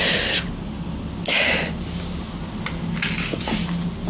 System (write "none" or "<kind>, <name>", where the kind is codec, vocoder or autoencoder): none